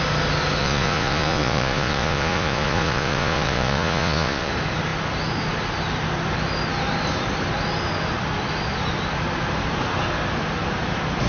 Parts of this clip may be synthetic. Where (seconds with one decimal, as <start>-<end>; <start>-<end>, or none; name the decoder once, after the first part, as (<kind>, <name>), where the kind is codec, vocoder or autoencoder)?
0.6-4.5 (vocoder, Vocos)